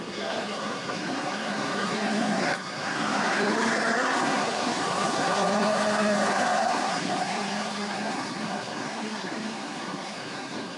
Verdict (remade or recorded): remade